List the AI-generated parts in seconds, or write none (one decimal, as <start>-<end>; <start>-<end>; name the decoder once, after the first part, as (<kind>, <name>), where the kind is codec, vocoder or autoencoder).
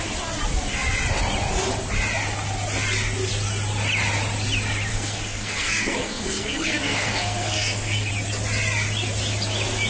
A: 4.9-8.1 (codec, SNAC)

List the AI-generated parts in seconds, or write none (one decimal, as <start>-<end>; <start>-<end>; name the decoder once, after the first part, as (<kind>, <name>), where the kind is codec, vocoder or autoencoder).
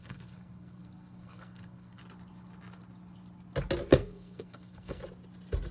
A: 0.0-2.0 (codec, SNAC); 3.9-5.0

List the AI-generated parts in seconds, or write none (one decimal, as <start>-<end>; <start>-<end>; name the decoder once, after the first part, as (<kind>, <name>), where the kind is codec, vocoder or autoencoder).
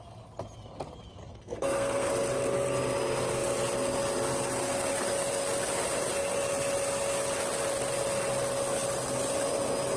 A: 1.3-2.1 (codec, SNAC)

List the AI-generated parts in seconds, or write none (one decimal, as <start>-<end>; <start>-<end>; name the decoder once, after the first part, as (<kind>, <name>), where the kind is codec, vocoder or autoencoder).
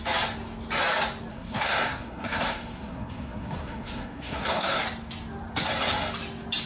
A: 1.3-4.8 (codec, SNAC)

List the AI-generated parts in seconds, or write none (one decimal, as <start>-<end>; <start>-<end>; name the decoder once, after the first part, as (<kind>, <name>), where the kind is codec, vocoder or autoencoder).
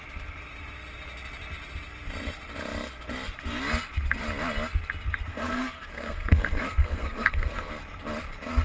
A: 5.3-7.7 (codec, SNAC)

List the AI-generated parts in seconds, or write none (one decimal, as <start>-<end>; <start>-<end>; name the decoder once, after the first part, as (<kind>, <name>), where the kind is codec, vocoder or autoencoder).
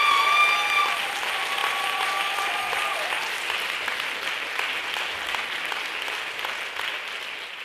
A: none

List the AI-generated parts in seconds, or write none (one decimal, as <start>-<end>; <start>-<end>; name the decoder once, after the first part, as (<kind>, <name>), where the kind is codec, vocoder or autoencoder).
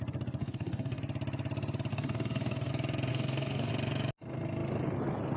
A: 0.4-1.0 (codec, SNAC); 1.9-2.7; 3.1-3.7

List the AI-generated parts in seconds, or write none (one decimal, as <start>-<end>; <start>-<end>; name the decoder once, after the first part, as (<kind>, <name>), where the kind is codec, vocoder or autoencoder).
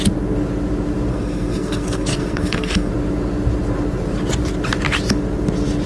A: 1.1-2.9 (codec, SNAC)